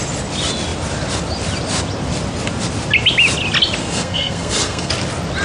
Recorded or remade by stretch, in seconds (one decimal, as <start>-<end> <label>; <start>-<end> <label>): 0.0-3.8 recorded; 3.8-4.9 remade; 4.9-5.4 recorded